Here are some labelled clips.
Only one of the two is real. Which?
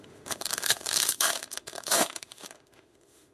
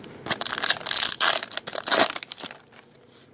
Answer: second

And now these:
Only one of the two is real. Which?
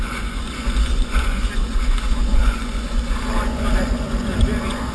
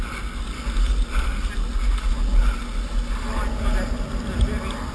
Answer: second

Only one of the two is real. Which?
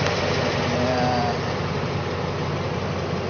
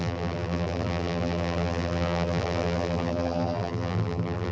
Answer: first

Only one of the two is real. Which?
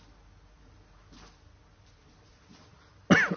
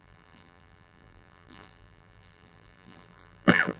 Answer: first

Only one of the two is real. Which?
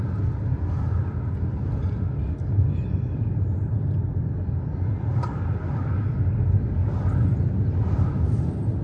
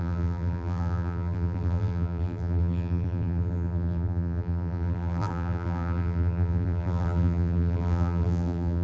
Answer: first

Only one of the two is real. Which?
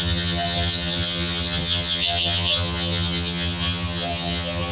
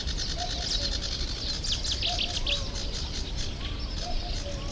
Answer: second